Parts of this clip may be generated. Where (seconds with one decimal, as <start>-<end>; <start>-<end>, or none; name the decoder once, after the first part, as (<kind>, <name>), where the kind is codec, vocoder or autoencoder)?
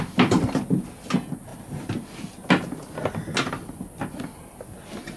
none